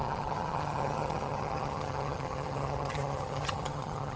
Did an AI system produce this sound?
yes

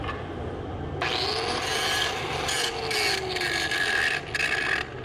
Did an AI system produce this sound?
no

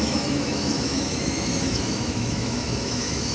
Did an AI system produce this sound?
yes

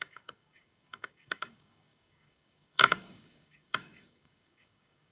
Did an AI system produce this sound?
yes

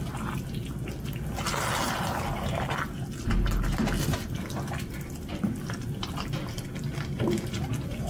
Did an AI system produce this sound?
no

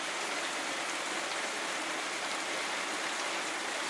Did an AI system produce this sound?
no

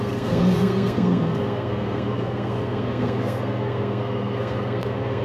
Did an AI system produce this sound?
yes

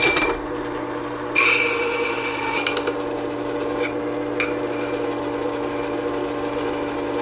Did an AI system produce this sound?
no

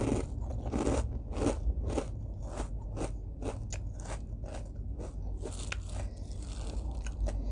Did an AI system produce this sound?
no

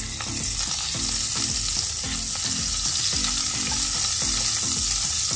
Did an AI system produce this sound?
no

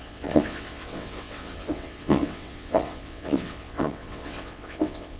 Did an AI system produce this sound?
yes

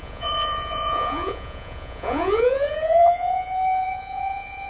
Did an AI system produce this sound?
yes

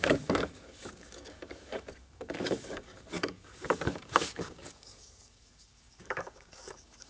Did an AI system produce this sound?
yes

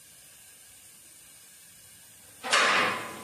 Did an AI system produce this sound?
no